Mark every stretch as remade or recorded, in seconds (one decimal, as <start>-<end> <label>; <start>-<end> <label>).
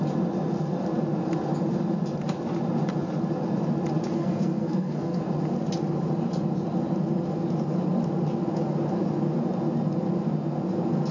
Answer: 0.0-4.1 recorded; 4.1-5.2 remade; 5.2-11.1 recorded